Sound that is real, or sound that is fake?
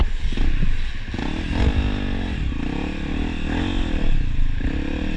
real